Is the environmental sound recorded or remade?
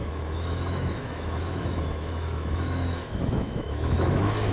remade